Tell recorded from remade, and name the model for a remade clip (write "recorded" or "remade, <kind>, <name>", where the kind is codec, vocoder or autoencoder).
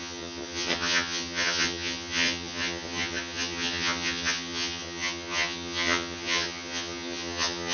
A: remade, vocoder, HiFi-GAN